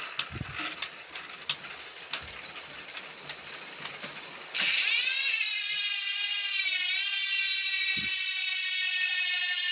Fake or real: real